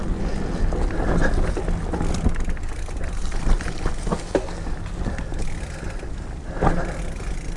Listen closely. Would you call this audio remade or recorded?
recorded